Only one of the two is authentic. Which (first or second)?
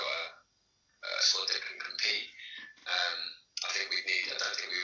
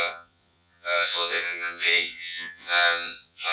first